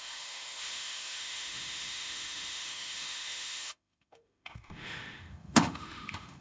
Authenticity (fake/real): fake